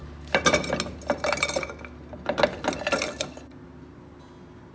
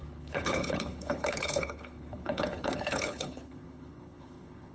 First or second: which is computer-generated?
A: second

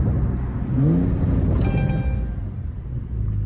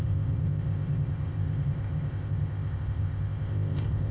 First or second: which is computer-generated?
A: second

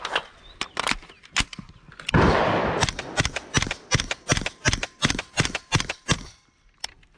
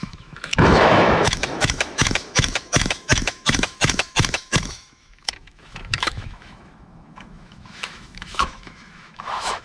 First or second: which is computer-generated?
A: second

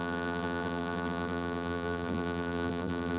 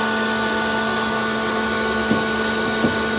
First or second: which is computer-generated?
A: first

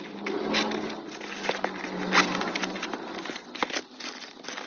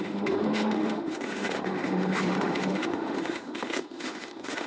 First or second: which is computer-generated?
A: second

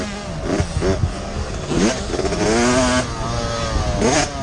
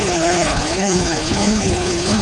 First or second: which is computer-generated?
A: second